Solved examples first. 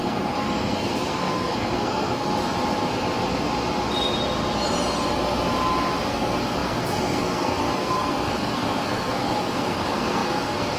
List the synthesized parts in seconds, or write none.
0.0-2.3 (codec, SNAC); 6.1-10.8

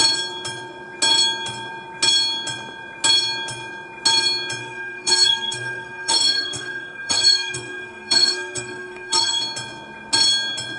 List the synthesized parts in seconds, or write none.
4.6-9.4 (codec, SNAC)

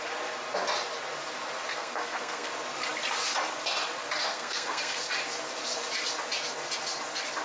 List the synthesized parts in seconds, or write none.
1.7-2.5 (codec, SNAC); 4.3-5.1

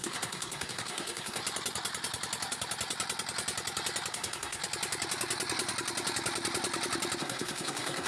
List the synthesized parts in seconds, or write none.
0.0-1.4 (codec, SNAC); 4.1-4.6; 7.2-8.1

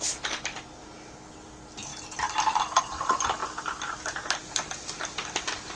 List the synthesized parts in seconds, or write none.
none